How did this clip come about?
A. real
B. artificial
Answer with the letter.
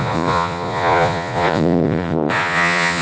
B